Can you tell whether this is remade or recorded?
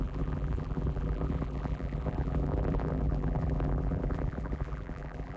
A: remade